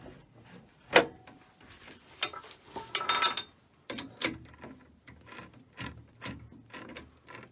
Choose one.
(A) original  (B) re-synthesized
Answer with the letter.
A